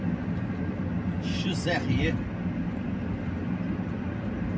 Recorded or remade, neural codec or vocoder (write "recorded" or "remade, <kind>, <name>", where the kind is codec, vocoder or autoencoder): recorded